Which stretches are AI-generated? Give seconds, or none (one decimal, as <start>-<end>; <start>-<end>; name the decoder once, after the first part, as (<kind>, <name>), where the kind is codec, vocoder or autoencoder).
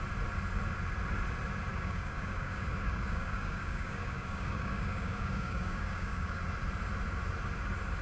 1.7-6.4 (codec, DAC)